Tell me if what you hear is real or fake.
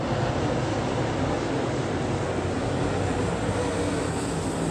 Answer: real